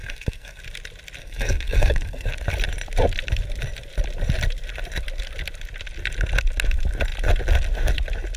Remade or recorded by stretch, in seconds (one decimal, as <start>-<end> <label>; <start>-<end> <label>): 0.0-0.6 remade; 0.6-1.2 recorded; 1.2-2.3 remade; 2.3-8.4 recorded